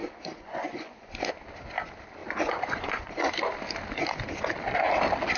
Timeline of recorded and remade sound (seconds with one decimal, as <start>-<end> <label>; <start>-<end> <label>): 0.0-1.3 remade; 1.3-2.2 recorded; 2.2-3.3 remade; 3.3-5.4 recorded